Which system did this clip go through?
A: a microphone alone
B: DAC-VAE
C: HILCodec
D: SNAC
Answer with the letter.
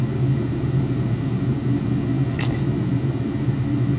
A